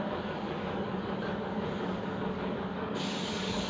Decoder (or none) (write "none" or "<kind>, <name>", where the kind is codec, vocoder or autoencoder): codec, DAC